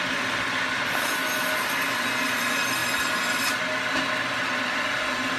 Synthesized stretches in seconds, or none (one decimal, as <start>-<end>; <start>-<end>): none